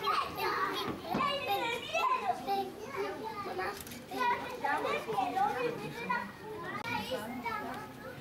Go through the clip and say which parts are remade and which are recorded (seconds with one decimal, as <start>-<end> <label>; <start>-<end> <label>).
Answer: 0.0-1.9 recorded; 1.9-6.1 remade; 6.1-8.2 recorded